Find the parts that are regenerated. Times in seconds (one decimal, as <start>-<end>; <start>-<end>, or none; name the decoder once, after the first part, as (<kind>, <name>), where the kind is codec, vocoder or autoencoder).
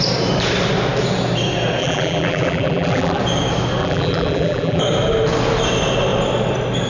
1.8-3.2 (vocoder, BigVGAN v2); 3.8-4.8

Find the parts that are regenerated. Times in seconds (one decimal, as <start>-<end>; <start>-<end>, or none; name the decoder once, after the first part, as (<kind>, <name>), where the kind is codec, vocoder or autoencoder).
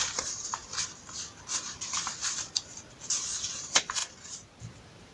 0.0-0.6 (vocoder, BigVGAN v2); 3.2-4.0; 4.6-5.1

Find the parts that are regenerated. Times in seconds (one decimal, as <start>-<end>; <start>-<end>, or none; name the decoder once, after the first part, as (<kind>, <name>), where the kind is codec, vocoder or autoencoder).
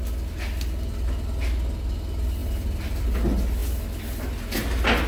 2.4-3.2 (vocoder, BigVGAN v2)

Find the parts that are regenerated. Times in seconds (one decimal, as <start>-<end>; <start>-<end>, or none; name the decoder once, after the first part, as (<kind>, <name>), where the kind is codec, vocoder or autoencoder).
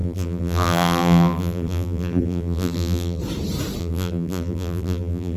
0.0-3.2 (vocoder, BigVGAN v2); 3.8-5.4